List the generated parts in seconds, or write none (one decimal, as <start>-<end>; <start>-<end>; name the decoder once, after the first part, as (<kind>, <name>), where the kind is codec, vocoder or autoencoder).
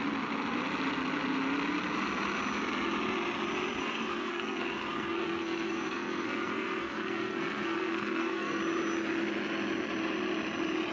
3.8-8.6 (codec, SNAC)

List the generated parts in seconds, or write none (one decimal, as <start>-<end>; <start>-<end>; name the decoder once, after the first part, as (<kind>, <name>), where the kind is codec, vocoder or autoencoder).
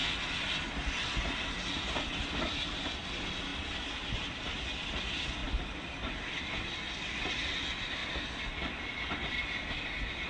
none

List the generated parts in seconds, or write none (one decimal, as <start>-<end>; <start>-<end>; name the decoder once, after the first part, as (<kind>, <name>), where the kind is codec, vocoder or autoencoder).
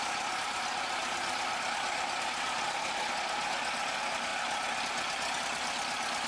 none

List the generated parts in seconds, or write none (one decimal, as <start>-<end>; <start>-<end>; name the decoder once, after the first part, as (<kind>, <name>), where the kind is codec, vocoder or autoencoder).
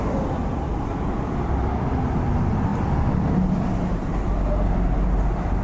none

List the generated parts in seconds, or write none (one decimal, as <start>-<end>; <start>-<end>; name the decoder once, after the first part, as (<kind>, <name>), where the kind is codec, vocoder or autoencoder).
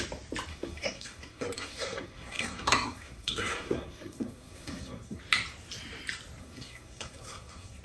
0.5-5.2 (codec, SNAC); 6.4-7.8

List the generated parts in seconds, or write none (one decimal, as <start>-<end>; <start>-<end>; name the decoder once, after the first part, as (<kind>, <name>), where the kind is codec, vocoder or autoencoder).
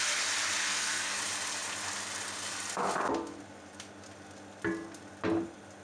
0.6-1.2 (codec, SNAC)